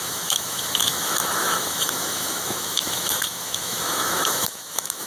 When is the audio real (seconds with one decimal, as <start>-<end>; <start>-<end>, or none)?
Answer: none